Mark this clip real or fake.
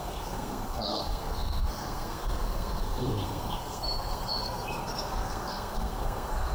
fake